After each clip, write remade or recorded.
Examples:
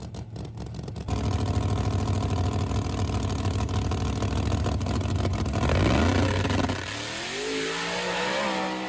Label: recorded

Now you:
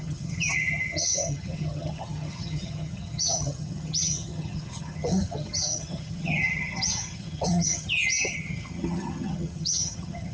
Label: remade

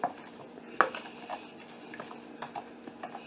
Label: recorded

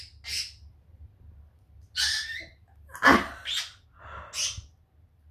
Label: recorded